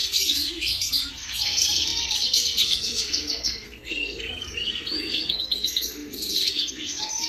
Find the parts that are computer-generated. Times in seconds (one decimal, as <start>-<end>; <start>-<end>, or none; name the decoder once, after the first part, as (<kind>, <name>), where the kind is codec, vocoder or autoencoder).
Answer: 0.0-7.3 (codec, SNAC)